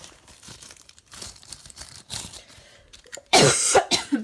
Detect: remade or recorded remade